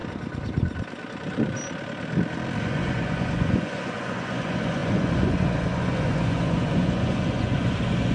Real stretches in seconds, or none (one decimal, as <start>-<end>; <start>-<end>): 0.0-2.6